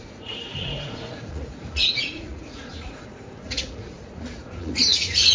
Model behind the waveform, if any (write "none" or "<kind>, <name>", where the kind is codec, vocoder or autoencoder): vocoder, Vocos